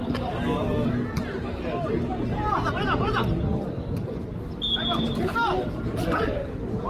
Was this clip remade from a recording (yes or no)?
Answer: no